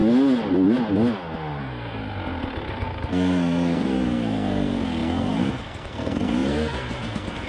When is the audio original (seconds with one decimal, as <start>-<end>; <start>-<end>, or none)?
0.0-1.6; 2.0-2.7